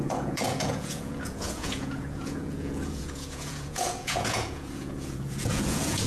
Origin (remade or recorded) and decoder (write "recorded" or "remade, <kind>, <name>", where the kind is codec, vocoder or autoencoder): remade, vocoder, Vocos